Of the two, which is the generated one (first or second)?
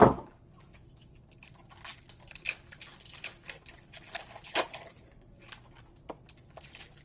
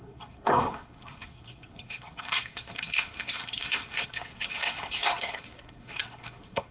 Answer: second